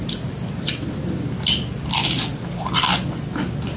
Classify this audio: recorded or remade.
recorded